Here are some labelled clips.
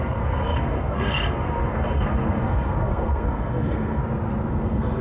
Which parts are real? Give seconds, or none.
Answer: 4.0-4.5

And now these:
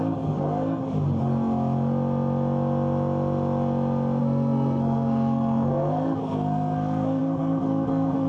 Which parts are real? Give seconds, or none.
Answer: 0.8-4.2

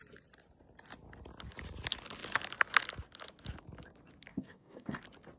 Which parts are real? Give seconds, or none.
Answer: 0.0-4.3; 5.0-5.4

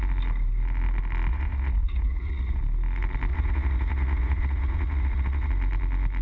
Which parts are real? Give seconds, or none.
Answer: 0.0-1.3; 2.6-3.3; 5.5-6.2

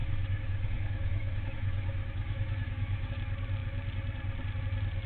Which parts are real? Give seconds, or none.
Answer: 3.1-5.1

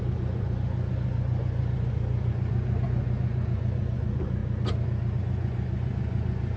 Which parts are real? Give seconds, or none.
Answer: 4.4-5.2